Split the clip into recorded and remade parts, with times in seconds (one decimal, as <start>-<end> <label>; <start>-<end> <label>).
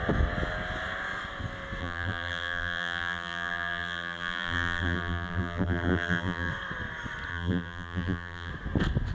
0.0-1.8 recorded; 1.8-6.5 remade; 6.5-7.3 recorded; 7.3-8.5 remade; 8.5-9.1 recorded